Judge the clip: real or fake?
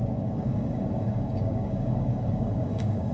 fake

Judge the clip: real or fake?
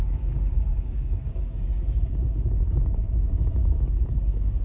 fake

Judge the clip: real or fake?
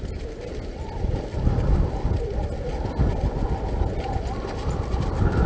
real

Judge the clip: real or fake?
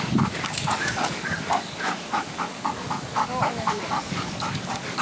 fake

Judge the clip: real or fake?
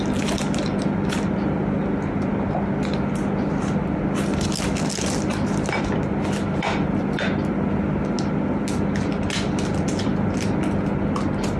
real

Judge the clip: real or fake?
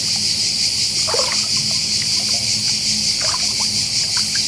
real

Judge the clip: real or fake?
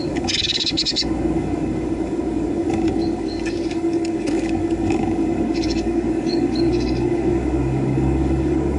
fake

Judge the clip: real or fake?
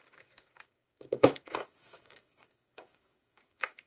fake